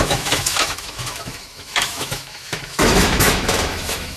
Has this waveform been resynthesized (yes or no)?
yes